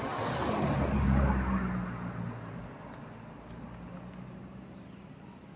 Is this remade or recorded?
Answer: recorded